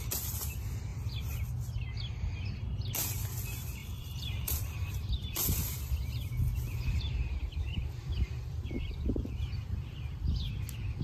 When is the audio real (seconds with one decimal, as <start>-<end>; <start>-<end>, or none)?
0.0-0.9; 1.5-3.8; 7.0-7.4; 10.5-11.0